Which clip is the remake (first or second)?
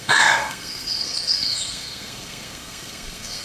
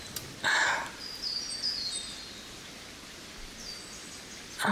first